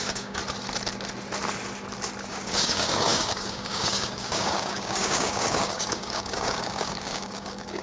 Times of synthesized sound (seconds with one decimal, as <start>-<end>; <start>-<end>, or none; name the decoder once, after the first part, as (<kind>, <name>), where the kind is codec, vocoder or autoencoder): 0.0-0.4 (codec, DAC); 2.3-7.8